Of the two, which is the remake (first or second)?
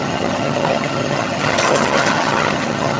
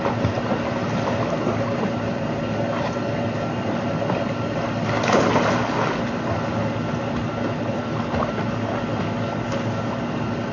first